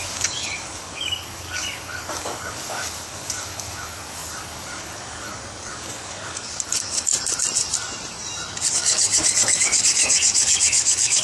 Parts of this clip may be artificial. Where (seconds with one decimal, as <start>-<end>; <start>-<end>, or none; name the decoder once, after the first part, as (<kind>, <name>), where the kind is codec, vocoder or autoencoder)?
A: 0.0-7.1 (codec, DAC); 8.7-11.2